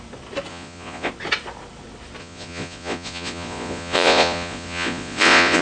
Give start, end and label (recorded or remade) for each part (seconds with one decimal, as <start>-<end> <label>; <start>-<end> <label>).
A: 0.0-0.5 recorded; 0.5-1.1 remade; 1.1-2.2 recorded; 2.2-5.6 remade